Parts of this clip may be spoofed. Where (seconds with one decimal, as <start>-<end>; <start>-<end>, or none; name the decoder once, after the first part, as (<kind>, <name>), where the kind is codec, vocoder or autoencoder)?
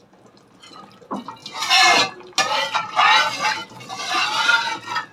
1.4-2.0 (vocoder, BigVGAN v2); 3.6-4.2